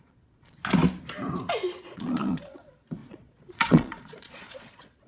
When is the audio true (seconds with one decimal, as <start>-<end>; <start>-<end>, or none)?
0.6-1.8